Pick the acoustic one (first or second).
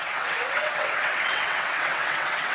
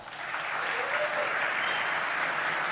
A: second